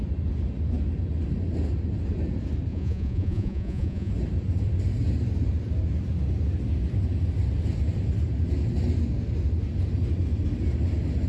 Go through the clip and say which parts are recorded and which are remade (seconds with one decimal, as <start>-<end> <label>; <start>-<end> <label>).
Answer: 0.0-2.7 recorded; 2.7-4.1 remade; 4.1-11.3 recorded